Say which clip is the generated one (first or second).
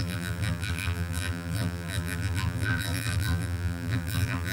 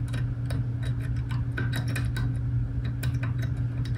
first